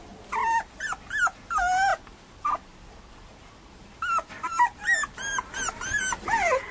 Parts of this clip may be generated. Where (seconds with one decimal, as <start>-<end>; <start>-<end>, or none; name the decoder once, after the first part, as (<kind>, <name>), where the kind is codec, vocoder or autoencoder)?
none